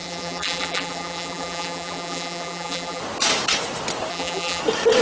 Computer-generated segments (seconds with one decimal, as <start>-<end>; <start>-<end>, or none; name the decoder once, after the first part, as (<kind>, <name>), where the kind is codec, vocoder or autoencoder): 0.0-3.0 (vocoder, BigVGAN v2); 4.1-4.6